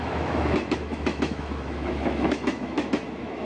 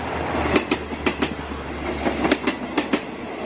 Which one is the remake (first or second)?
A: first